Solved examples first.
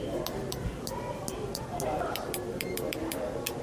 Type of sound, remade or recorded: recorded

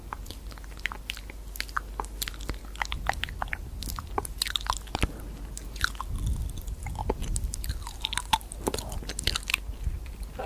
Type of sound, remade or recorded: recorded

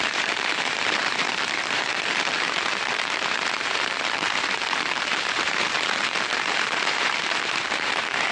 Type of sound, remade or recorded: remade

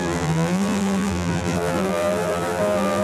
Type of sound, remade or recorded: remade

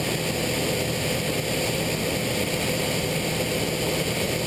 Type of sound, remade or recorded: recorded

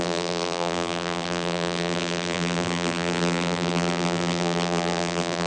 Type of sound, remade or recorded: remade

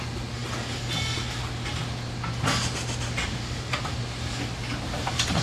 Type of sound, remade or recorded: recorded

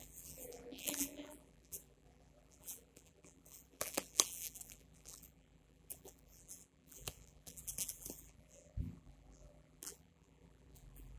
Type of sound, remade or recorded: remade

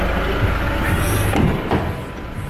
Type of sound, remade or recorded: recorded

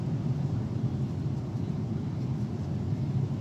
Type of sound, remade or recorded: remade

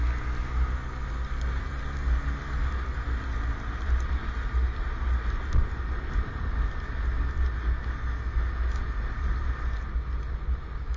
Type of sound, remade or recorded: recorded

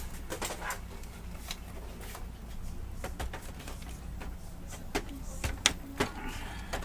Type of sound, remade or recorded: recorded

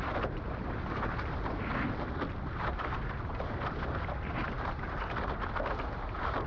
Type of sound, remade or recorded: remade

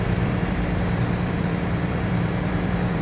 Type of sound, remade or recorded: remade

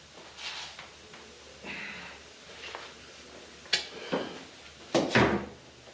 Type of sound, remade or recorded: recorded